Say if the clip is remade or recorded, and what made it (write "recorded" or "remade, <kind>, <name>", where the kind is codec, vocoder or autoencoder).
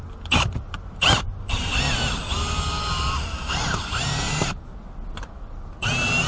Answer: recorded